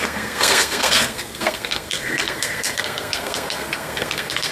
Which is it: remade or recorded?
remade